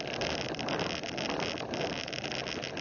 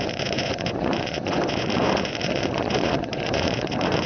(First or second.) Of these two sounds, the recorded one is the first